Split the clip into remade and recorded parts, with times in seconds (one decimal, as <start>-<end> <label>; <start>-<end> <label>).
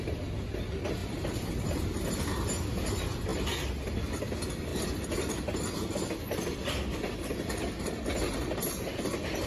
0.0-1.0 recorded; 1.0-2.1 remade; 2.1-9.5 recorded